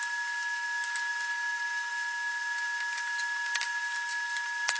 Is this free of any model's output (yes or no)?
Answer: yes